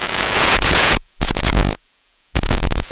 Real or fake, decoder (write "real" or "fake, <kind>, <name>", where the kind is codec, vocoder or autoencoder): fake, vocoder, Vocos